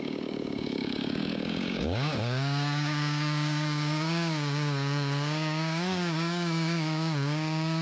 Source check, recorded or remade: remade